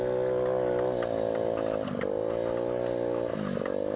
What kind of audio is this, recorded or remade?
recorded